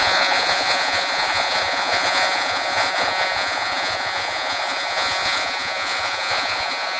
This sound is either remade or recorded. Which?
remade